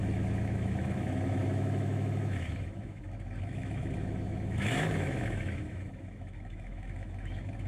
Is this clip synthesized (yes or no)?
yes